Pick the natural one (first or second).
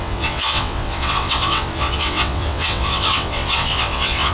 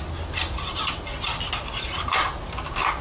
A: second